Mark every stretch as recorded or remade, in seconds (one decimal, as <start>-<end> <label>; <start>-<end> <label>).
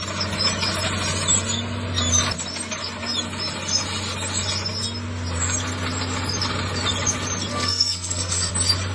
0.0-7.5 recorded; 7.5-8.5 remade; 8.5-8.9 recorded